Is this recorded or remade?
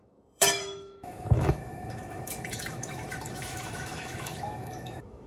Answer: remade